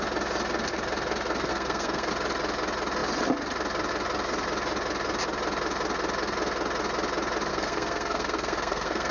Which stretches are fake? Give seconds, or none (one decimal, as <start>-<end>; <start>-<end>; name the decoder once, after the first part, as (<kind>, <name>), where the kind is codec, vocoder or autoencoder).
1.5-2.1 (codec, SNAC); 7.5-9.1